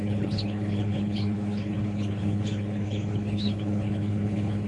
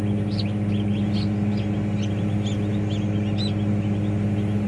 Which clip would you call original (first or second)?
second